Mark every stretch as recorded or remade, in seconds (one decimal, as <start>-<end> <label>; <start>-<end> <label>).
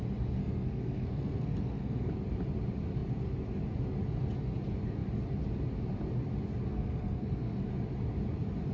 0.0-0.4 recorded; 0.4-2.1 remade; 2.1-6.7 recorded; 6.7-7.7 remade; 7.7-8.7 recorded